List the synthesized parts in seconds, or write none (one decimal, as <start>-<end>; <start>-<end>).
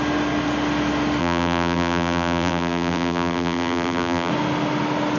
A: 1.2-4.3